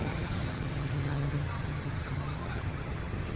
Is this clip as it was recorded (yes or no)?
no